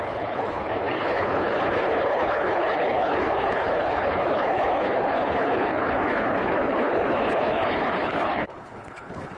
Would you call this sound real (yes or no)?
no